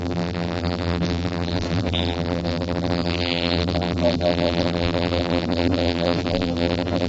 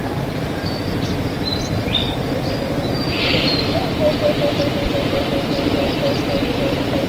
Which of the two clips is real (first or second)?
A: second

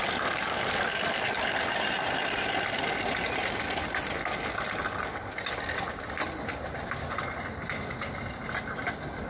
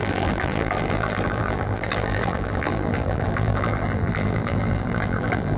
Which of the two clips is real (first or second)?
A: first